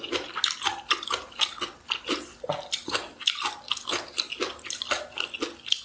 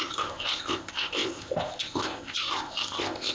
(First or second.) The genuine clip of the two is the first